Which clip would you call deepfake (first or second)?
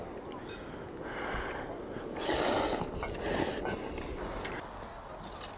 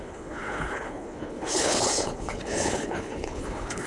second